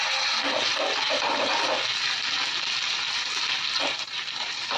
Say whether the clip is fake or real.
real